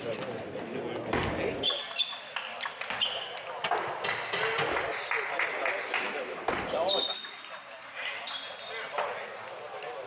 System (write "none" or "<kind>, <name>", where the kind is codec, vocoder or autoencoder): none